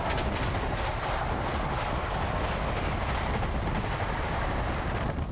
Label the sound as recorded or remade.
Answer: recorded